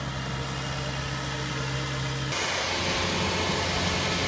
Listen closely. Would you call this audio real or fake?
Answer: real